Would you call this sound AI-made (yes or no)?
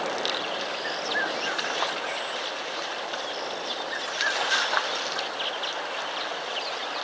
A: no